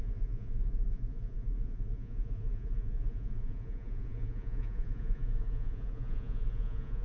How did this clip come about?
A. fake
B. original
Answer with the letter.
A